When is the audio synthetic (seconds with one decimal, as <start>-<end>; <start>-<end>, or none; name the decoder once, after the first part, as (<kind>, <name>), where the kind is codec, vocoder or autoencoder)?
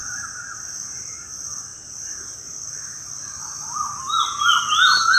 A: none